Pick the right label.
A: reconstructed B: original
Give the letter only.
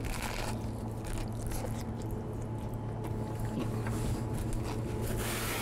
B